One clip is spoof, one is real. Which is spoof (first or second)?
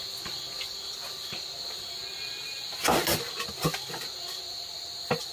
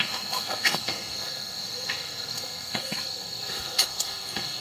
second